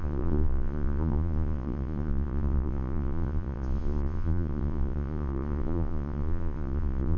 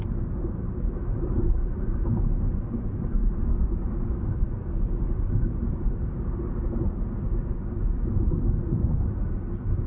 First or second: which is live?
second